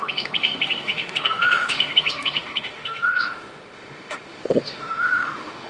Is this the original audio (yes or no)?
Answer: no